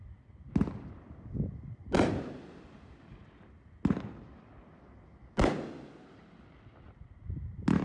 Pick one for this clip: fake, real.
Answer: real